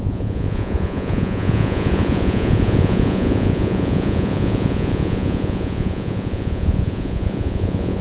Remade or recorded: remade